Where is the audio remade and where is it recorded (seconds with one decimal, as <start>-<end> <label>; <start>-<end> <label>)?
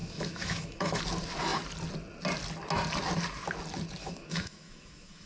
0.0-1.0 remade; 1.0-4.0 recorded; 4.0-5.3 remade